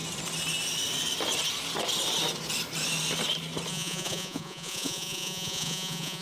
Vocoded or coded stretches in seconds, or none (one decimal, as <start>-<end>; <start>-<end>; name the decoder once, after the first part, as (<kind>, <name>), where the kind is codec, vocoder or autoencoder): 3.7-6.2 (vocoder, Vocos)